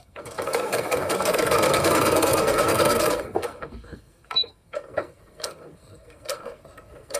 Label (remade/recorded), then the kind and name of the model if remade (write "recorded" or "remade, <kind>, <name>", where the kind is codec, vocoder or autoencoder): remade, codec, SNAC